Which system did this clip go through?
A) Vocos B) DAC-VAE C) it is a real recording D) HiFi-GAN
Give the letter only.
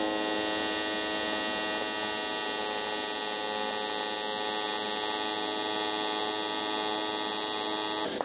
C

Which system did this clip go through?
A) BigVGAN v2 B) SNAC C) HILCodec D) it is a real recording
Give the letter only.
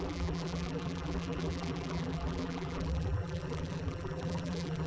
A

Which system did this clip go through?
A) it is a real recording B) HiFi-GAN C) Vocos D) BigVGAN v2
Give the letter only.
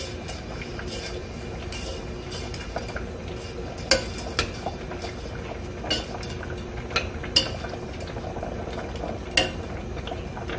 A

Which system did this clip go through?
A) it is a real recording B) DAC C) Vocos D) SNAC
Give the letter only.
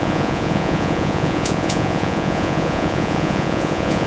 C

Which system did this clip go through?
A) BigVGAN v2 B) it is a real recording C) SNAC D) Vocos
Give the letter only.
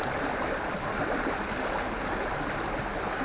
B